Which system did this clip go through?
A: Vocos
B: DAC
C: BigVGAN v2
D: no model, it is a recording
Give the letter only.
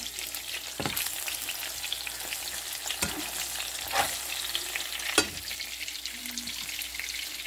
D